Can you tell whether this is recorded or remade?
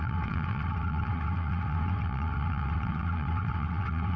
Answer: remade